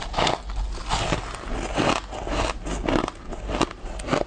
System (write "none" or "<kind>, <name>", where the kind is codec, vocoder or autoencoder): none